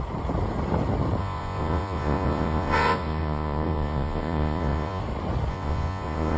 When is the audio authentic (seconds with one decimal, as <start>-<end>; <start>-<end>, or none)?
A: 0.0-1.2; 5.0-5.5

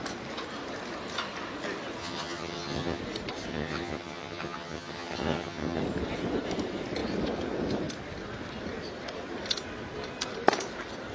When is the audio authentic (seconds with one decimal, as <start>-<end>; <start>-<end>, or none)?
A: 0.0-2.0; 3.0-3.5; 5.8-11.1

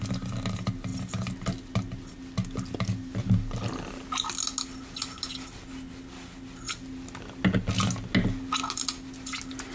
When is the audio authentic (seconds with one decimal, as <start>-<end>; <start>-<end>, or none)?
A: 0.0-9.7

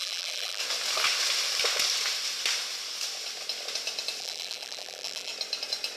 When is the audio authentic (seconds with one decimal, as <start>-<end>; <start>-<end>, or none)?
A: 0.6-4.2; 5.3-6.0

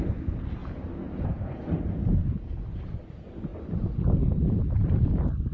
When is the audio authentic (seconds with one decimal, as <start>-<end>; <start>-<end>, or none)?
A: 0.0-0.6; 1.5-5.5

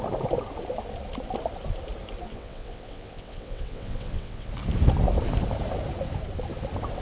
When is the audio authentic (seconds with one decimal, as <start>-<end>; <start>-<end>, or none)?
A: 0.0-2.3; 4.5-7.0

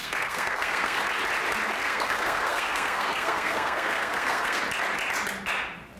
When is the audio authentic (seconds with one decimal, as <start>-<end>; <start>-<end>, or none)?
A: 1.0-1.8; 4.6-6.0

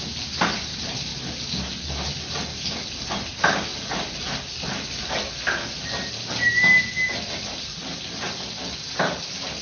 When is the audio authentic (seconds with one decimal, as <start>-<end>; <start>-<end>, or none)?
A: 0.0-9.6